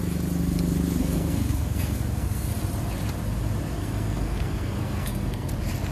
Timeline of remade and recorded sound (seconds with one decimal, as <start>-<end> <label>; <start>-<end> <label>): 0.0-1.0 recorded; 1.0-2.5 remade; 2.5-3.8 recorded; 3.8-5.5 remade; 5.5-5.9 recorded